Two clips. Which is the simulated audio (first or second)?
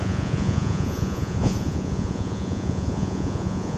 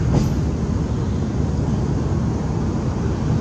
first